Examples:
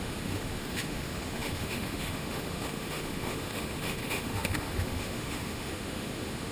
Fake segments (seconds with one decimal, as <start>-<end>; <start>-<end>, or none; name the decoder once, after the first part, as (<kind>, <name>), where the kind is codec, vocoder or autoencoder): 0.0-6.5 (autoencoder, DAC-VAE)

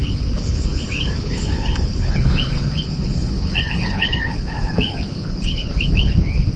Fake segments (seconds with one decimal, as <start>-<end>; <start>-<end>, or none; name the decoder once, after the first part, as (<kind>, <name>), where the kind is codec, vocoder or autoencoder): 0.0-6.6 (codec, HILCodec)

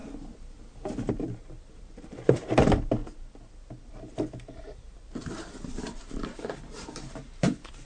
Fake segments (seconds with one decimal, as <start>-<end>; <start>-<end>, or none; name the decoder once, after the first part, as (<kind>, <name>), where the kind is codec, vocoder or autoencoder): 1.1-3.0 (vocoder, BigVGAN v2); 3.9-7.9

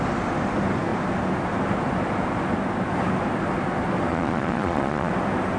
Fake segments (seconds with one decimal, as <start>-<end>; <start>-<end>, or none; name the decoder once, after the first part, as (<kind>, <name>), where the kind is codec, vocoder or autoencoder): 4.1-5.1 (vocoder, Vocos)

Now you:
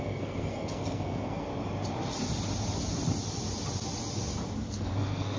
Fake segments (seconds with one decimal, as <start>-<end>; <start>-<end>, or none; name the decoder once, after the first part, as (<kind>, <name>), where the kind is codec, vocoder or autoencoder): 0.0-1.5 (codec, SNAC); 4.7-5.4

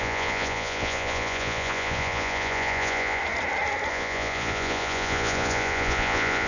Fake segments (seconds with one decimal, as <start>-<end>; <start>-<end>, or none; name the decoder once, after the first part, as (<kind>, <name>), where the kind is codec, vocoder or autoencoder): 0.0-3.2 (vocoder, Vocos); 3.9-6.5

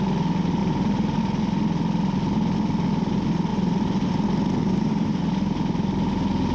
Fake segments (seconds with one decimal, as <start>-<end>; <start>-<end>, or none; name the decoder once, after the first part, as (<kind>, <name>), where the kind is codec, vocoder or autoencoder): 0.6-1.2 (vocoder, BigVGAN v2); 3.5-4.1; 4.6-5.2

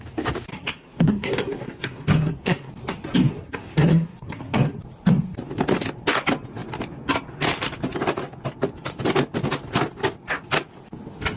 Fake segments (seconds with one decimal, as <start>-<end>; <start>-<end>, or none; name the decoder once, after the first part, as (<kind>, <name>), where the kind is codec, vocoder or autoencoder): 0.5-2.7 (codec, SNAC); 3.3-4.8